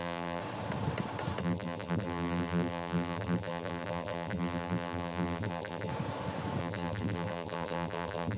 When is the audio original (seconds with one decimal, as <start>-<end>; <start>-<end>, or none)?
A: 0.4-1.4; 5.9-6.6